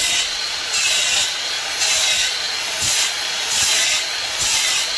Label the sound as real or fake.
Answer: fake